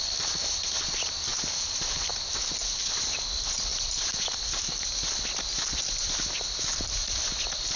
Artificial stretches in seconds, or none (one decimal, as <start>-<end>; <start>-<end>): none